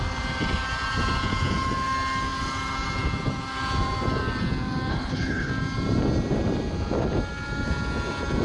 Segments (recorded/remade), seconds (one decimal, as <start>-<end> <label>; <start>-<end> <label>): 0.0-4.9 recorded; 4.9-5.5 remade; 5.5-8.4 recorded